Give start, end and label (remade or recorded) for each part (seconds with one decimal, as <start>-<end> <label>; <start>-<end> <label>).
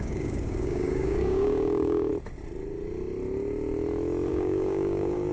0.0-2.1 remade; 2.1-4.3 recorded; 4.3-5.3 remade